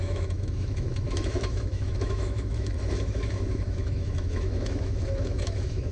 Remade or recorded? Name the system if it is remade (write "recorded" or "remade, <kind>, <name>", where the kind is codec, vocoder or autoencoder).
remade, autoencoder, DAC-VAE